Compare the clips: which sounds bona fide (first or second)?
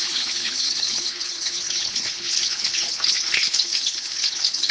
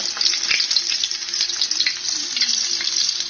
second